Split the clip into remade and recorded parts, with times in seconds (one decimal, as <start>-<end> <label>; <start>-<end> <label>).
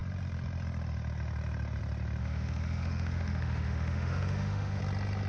0.0-2.2 recorded; 2.2-4.8 remade; 4.8-5.3 recorded